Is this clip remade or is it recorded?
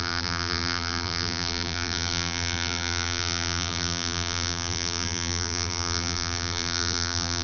remade